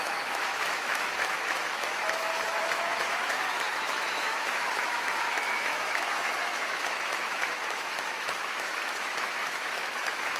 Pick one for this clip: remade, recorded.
remade